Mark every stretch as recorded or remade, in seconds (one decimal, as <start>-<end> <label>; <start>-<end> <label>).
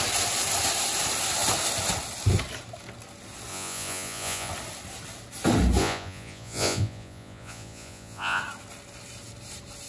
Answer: 0.0-3.5 recorded; 3.5-4.5 remade; 4.5-5.8 recorded; 5.8-8.4 remade; 8.4-9.9 recorded